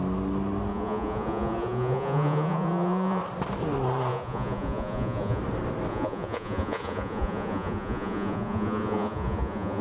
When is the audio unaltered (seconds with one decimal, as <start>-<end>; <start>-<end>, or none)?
0.0-0.7; 3.2-4.1; 5.4-5.9